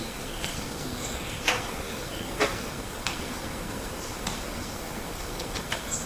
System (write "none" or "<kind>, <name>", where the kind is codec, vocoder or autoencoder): codec, SNAC